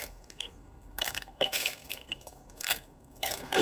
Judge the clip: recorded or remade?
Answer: remade